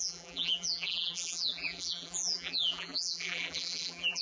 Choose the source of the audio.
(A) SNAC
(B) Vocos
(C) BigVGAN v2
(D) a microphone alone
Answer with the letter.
C